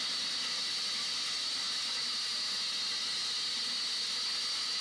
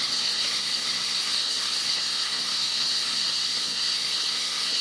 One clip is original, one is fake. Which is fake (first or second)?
second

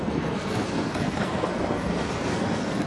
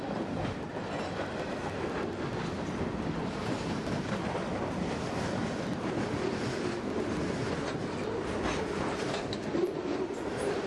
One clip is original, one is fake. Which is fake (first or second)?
first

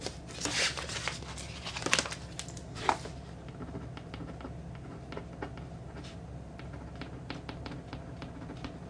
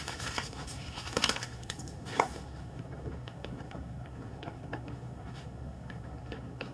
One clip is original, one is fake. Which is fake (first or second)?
second